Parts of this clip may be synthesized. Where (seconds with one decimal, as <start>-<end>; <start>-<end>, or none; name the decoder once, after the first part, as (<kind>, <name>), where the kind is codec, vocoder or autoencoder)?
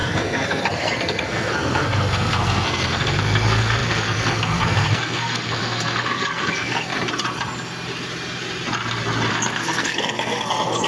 0.0-6.9 (codec, SNAC); 9.3-10.9